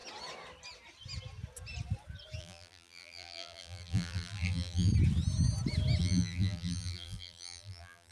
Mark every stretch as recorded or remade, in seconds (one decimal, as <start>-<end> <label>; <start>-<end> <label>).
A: 0.0-2.4 recorded; 2.4-4.9 remade; 4.9-6.0 recorded; 6.0-8.1 remade